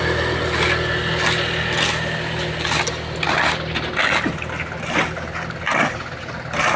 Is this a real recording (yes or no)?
yes